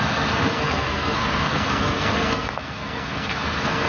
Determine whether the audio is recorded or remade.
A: remade